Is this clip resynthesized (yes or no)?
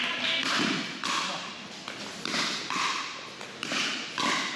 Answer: no